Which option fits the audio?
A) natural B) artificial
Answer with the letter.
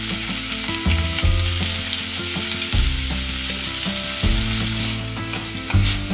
A